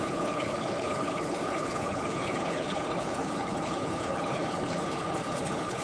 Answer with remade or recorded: remade